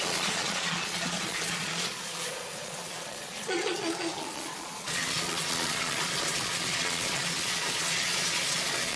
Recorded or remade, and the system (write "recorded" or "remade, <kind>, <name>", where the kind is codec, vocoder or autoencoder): remade, vocoder, Vocos